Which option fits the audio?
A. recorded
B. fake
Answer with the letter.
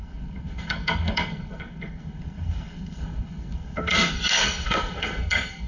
B